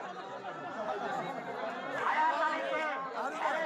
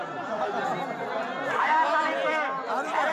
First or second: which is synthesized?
first